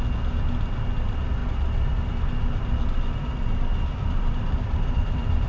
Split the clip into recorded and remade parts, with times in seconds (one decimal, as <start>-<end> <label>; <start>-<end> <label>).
0.0-1.4 recorded; 1.4-2.0 remade; 2.0-3.7 recorded; 3.7-5.5 remade